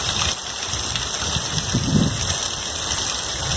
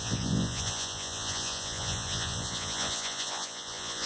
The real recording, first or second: first